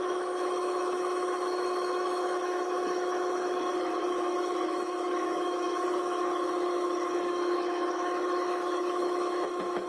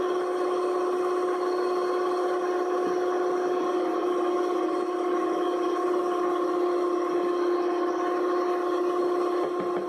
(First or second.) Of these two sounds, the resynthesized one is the first